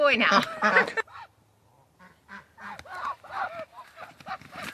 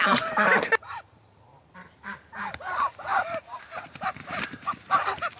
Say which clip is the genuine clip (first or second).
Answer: first